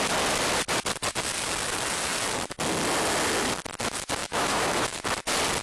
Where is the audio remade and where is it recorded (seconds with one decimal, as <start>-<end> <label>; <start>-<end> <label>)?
0.0-4.2 recorded; 4.2-5.0 remade; 5.0-5.6 recorded